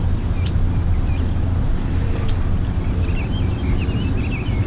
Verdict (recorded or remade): remade